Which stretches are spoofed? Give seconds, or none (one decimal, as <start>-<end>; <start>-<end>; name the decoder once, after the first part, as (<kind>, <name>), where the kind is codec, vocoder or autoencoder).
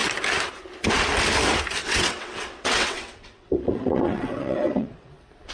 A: 1.8-5.1 (vocoder, WaveNeXt)